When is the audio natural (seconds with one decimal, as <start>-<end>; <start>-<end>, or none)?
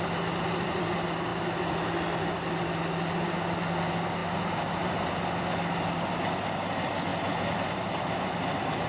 0.0-8.9